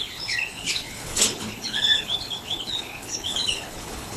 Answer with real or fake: fake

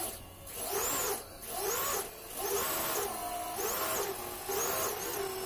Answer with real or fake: real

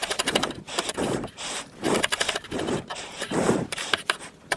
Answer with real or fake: fake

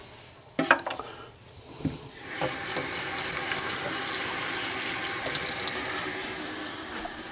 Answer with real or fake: real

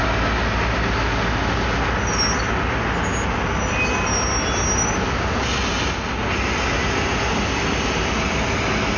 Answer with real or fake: real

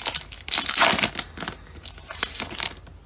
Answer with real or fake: real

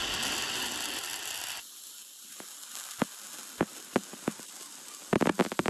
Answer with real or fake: real